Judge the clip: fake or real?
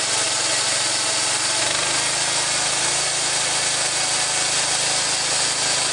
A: real